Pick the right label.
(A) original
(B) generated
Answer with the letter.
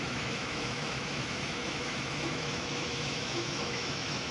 B